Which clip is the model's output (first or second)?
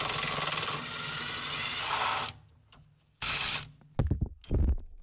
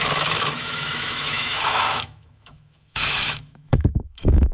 second